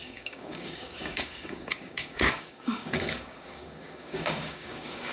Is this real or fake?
fake